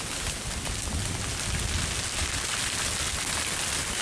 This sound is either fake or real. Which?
real